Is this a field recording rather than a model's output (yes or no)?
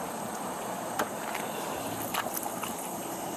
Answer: yes